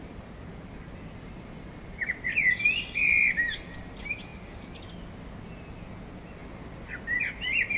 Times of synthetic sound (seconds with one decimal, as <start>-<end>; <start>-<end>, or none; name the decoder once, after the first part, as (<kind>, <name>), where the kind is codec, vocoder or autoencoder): none